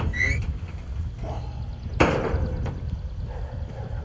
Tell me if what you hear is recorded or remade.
recorded